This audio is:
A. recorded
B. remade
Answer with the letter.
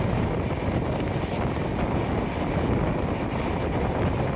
A